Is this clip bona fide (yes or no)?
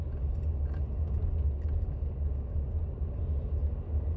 yes